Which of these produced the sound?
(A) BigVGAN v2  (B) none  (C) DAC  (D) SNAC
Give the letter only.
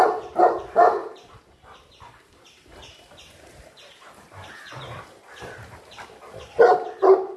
A